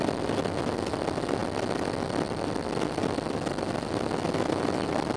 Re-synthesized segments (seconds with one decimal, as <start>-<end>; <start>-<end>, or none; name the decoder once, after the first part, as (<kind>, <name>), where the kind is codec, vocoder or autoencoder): none